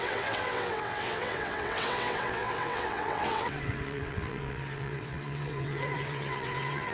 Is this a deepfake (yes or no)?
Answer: yes